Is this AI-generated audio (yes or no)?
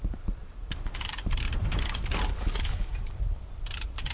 no